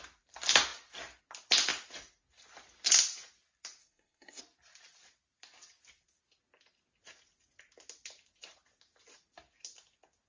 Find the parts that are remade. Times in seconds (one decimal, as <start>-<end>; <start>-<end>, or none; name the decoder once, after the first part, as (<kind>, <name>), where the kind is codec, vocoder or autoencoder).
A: 3.8-4.4 (codec, SNAC)